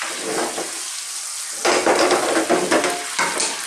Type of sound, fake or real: real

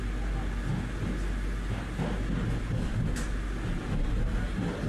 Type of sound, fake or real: real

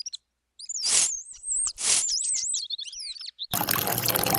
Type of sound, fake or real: fake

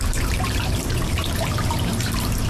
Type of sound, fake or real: fake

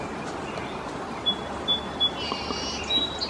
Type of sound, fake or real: real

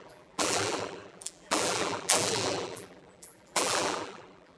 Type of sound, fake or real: fake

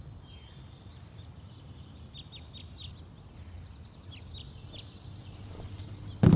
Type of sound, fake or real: real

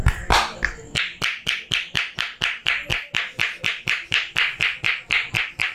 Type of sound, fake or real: real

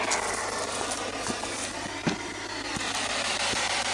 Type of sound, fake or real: real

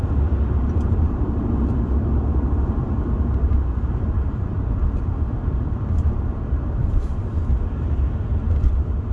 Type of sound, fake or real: fake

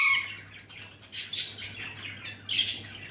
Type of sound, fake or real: real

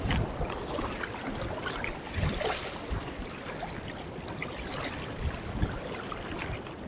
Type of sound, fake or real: real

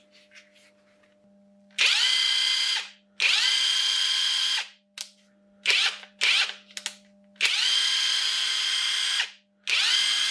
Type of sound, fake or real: real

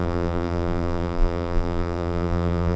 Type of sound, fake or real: fake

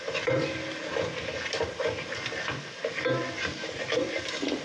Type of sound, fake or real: real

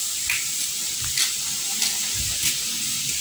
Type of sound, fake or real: fake